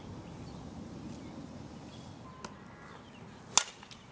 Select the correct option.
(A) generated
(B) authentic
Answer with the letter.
B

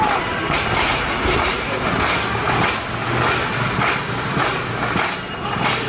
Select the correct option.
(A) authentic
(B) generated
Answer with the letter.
A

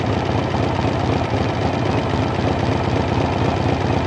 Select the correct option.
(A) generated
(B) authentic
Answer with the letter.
B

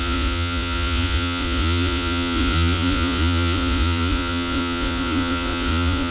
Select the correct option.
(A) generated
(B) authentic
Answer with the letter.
A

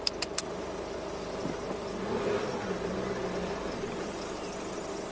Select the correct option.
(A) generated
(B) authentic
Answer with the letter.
B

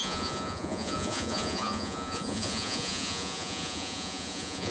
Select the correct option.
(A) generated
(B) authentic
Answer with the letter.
A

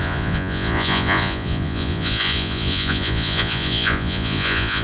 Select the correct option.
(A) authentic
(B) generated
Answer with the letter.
B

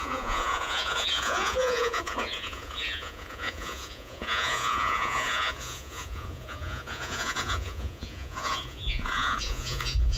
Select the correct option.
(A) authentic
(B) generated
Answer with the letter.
B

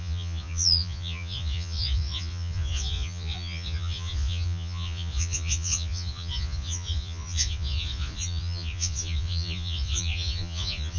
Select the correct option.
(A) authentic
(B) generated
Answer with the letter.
B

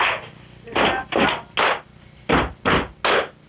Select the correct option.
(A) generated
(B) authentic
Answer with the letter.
B